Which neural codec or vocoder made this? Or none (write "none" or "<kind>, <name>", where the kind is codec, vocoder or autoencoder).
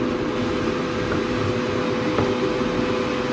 none